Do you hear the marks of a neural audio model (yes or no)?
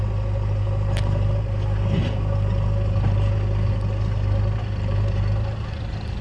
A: no